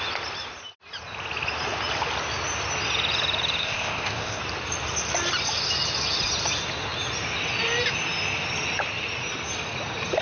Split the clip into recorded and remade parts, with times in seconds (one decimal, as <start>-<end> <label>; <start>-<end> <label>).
0.0-3.6 recorded; 3.6-4.4 remade; 4.4-10.2 recorded